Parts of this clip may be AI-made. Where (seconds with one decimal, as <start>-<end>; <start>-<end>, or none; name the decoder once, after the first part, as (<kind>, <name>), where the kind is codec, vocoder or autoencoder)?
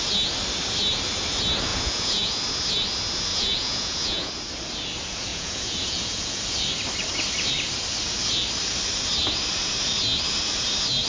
1.7-2.4 (vocoder, Vocos); 3.3-4.3; 5.3-6.4